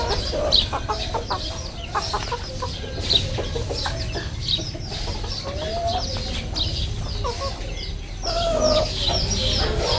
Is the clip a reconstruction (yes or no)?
no